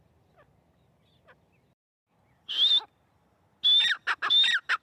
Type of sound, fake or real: real